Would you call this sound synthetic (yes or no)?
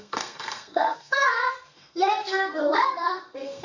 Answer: yes